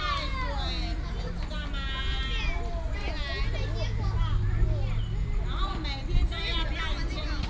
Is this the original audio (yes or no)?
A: yes